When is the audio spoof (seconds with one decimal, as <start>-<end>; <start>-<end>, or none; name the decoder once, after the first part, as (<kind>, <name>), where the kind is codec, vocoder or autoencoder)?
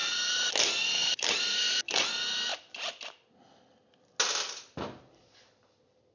0.0-0.5 (vocoder, BigVGAN v2); 1.0-2.1